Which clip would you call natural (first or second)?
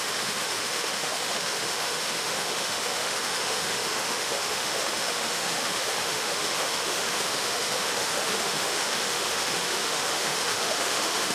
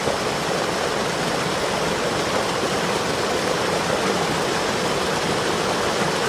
second